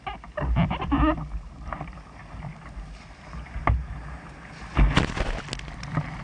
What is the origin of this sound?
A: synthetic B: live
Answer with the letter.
B